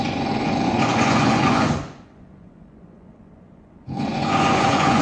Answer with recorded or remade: remade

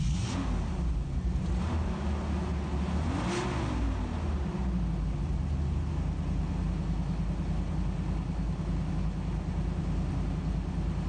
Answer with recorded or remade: recorded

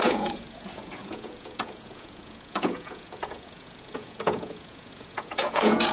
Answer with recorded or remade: remade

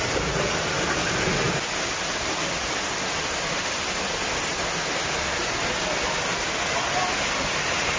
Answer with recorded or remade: recorded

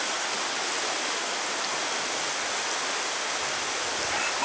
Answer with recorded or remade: recorded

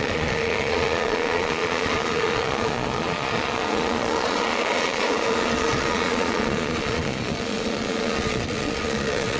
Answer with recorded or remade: remade